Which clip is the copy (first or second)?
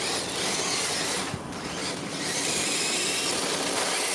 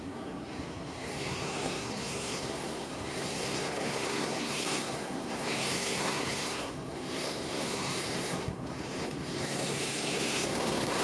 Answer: second